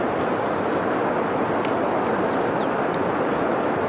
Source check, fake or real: real